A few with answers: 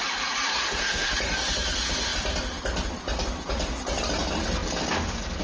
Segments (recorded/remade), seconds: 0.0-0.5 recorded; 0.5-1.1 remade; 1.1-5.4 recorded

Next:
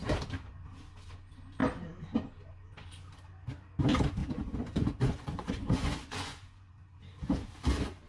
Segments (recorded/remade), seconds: 0.0-4.2 recorded; 4.2-6.7 remade; 6.7-8.1 recorded

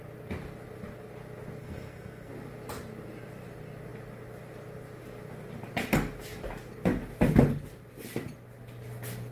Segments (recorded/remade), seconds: 0.0-1.6 recorded; 1.6-2.3 remade; 2.3-9.3 recorded

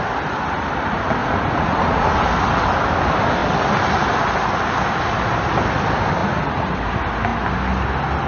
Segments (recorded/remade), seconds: 0.0-1.2 recorded; 1.2-2.2 remade; 2.2-6.2 recorded; 6.2-6.8 remade; 6.8-8.3 recorded

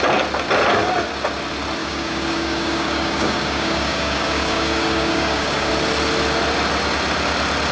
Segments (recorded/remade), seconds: 0.0-1.8 recorded; 1.8-5.7 remade; 5.7-7.7 recorded

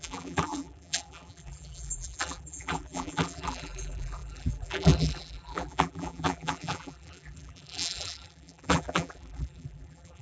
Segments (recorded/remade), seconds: 0.0-10.2 remade

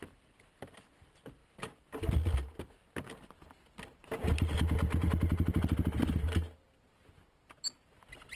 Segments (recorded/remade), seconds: 0.0-8.4 recorded

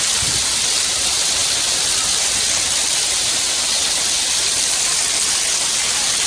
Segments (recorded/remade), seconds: 0.0-6.3 recorded